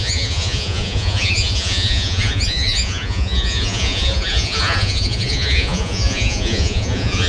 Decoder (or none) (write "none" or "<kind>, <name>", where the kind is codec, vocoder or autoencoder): vocoder, Vocos